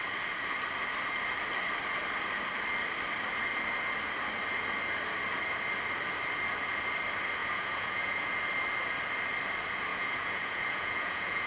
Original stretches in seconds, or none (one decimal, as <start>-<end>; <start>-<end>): 0.0-7.4; 8.3-9.9